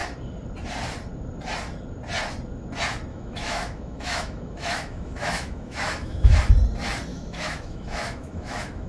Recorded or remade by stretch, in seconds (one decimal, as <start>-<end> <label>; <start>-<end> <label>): 0.0-3.1 recorded; 3.1-6.4 remade; 6.4-7.1 recorded; 7.1-8.9 remade